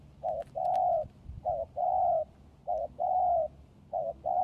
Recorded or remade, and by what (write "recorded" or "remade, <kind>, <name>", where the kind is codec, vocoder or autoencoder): recorded